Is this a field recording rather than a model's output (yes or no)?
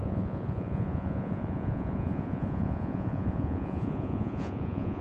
no